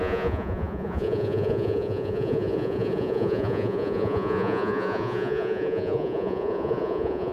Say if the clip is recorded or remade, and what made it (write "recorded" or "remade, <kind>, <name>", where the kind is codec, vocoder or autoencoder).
remade, vocoder, Vocos